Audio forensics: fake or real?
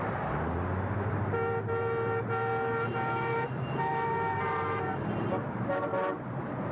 fake